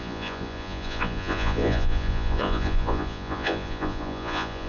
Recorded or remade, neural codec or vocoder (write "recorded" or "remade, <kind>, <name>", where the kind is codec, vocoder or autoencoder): remade, vocoder, Vocos